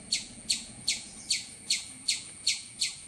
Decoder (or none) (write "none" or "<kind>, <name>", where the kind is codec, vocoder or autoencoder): vocoder, Vocos